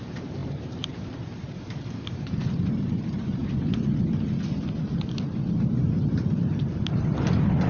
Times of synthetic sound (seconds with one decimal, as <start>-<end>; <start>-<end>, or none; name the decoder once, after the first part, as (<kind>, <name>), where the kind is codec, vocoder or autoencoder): 0.0-3.4 (vocoder, BigVGAN v2); 6.1-7.7